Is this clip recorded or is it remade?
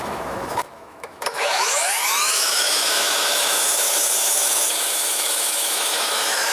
remade